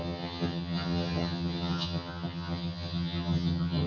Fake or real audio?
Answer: fake